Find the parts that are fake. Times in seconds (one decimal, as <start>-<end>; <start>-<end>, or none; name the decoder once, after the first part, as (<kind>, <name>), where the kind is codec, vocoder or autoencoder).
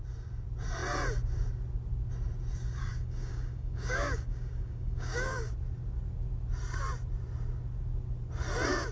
2.8-5.5 (codec, DAC)